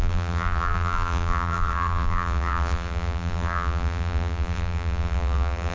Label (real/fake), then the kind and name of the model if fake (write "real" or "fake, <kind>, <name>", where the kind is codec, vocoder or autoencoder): fake, vocoder, BigVGAN v2